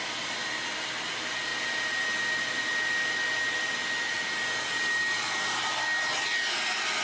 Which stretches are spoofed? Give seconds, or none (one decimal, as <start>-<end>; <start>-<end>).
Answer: none